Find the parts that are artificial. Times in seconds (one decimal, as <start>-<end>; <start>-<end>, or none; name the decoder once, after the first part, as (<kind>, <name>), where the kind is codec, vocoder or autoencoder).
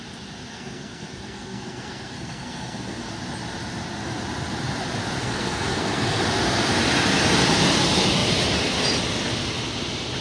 0.5-3.1 (codec, SNAC); 5.2-6.2